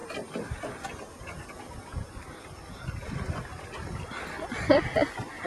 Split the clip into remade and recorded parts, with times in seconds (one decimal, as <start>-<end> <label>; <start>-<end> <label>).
0.0-5.5 recorded